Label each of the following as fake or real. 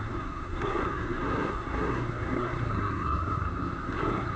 fake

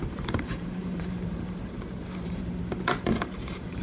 fake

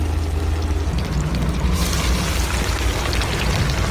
real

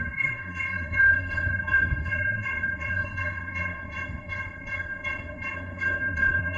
fake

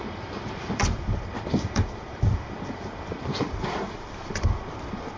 fake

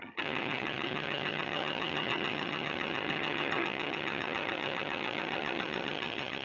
fake